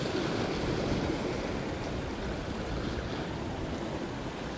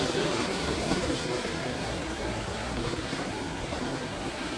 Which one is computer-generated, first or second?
second